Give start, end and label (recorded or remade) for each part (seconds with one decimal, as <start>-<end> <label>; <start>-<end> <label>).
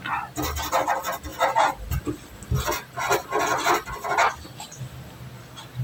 0.0-5.8 recorded